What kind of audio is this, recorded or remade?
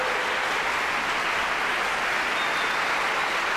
recorded